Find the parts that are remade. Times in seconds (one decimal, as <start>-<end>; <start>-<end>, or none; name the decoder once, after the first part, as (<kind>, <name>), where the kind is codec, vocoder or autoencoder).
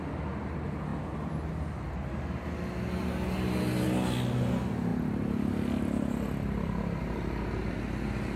none